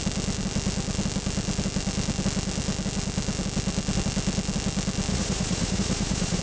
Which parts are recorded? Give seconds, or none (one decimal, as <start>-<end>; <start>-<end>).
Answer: 0.0-5.1